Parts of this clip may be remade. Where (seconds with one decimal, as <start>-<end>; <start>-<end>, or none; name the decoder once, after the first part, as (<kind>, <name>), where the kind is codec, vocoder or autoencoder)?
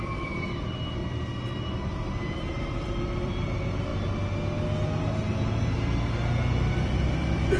0.0-1.0 (vocoder, BigVGAN v2); 1.8-3.9; 6.7-7.6